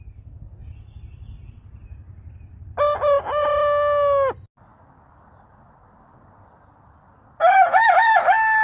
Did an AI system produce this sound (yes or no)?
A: no